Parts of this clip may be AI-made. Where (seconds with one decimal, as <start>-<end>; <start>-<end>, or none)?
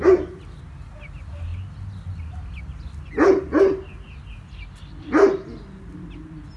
none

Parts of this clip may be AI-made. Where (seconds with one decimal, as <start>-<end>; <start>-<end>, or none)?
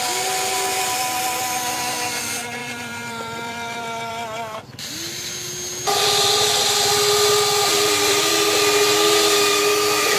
2.6-4.1; 7.7-8.3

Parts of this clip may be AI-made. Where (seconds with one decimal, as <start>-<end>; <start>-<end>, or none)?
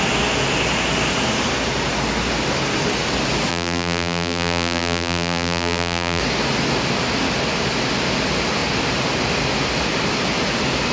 3.5-6.2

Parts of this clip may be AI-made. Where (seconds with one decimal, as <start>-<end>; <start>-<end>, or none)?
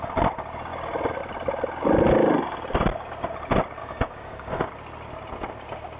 3.8-4.7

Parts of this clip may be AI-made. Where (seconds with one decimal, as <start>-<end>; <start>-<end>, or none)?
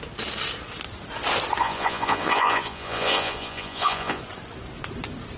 1.6-4.2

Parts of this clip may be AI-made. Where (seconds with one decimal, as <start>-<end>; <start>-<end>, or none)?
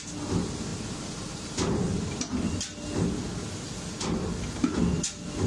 none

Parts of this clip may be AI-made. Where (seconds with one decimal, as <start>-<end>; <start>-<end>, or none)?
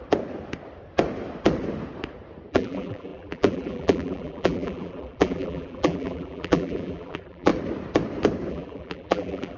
2.5-7.5; 8.5-9.6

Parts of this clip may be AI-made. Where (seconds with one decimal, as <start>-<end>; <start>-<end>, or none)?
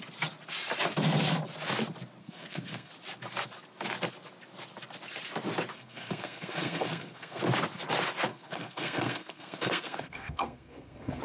2.2-2.9; 5.7-7.4; 8.3-11.2